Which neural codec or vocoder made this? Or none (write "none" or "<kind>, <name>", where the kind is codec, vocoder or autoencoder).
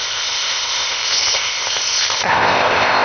codec, ZipCodec